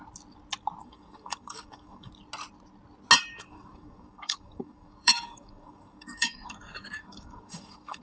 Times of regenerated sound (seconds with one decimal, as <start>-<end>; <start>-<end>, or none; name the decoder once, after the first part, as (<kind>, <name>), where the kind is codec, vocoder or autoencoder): 0.8-2.1 (codec, DAC); 3.3-8.0